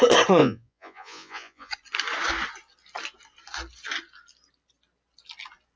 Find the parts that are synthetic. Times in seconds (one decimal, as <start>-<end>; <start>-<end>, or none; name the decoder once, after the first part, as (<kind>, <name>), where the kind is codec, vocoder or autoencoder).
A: 0.4-1.7 (vocoder, Vocos)